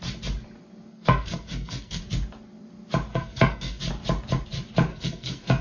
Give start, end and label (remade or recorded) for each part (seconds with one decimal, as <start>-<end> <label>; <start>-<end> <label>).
0.0-0.9 recorded; 0.9-2.0 remade; 2.0-3.1 recorded; 3.1-3.8 remade; 3.8-4.9 recorded; 4.9-5.6 remade